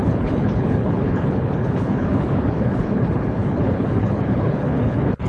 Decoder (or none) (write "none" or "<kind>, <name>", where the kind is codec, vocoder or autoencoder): codec, HILCodec